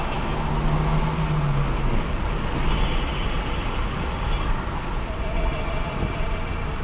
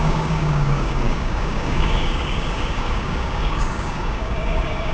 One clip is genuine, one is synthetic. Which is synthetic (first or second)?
second